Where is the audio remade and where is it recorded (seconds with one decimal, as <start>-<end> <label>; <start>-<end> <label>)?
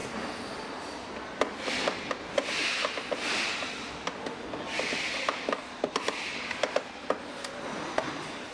0.0-8.5 recorded